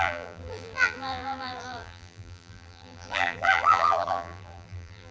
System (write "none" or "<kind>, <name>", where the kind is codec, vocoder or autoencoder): vocoder, BigVGAN v2